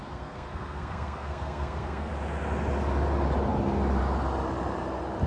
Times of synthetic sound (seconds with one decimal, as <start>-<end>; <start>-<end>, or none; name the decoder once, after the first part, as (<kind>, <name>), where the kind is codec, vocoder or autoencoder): 0.0-2.1 (codec, SNAC)